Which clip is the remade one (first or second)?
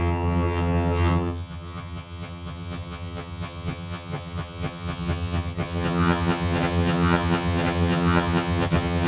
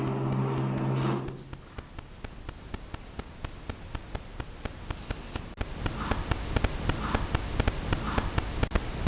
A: first